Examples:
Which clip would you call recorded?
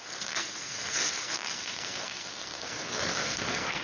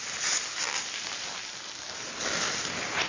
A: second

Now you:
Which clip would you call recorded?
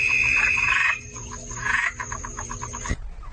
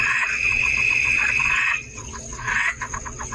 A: first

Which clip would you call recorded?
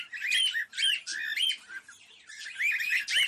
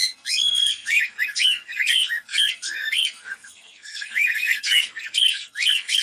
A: first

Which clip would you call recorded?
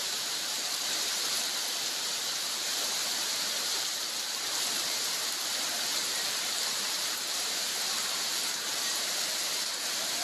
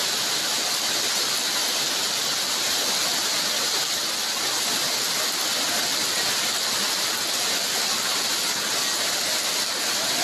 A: second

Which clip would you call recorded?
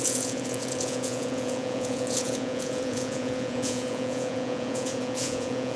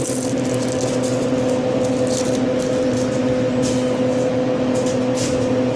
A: second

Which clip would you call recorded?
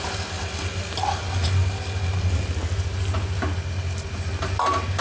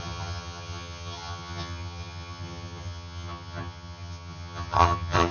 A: first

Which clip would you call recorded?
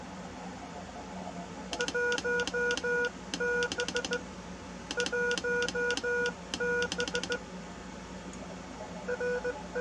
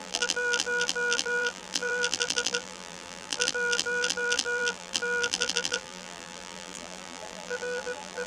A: first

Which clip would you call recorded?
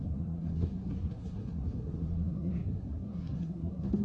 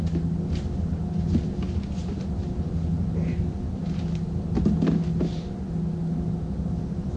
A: second